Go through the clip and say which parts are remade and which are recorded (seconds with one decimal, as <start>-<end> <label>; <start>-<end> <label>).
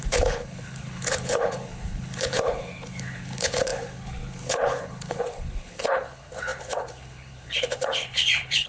0.0-8.7 remade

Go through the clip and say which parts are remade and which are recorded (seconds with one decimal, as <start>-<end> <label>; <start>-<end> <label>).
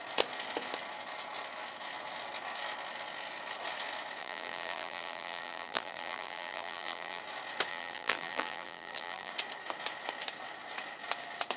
0.0-4.2 recorded; 4.2-7.2 remade; 7.2-7.7 recorded; 7.7-9.3 remade; 9.3-11.6 recorded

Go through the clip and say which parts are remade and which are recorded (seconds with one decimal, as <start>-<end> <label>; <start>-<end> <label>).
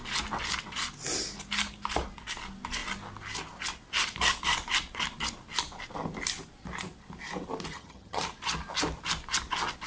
0.0-7.7 recorded; 7.7-8.2 remade; 8.2-9.9 recorded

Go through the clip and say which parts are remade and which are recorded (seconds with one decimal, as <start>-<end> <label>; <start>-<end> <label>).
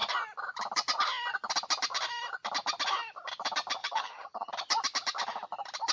0.0-3.8 recorded; 3.8-4.5 remade; 4.5-5.9 recorded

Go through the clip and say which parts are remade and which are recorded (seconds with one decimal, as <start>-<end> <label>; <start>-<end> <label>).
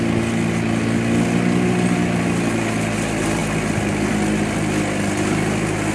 0.0-5.9 recorded